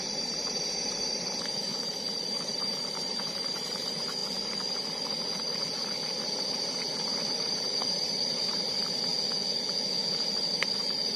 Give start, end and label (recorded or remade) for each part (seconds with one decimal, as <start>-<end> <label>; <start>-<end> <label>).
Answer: 0.0-4.2 remade; 4.2-7.3 recorded; 7.3-9.1 remade; 9.1-10.1 recorded; 10.1-11.2 remade